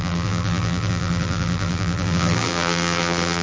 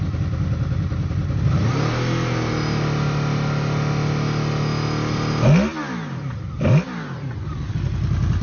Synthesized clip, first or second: first